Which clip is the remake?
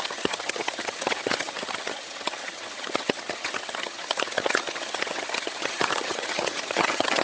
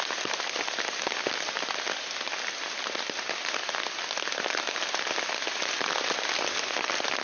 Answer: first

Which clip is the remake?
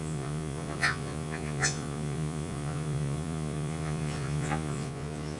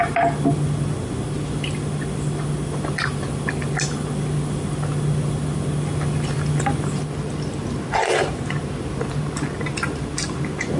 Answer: first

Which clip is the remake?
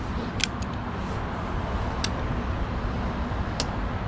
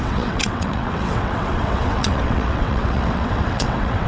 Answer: second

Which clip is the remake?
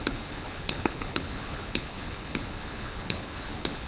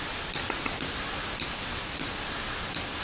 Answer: first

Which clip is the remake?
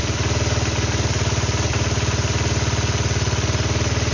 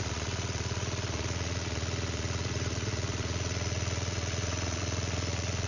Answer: second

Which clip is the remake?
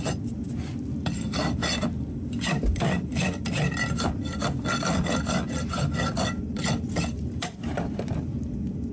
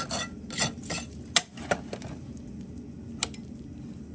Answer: first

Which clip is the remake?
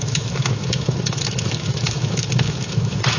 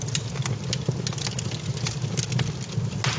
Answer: first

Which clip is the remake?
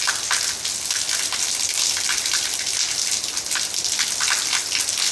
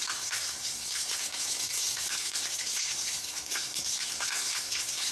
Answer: second